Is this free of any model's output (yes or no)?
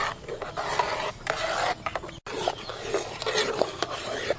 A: yes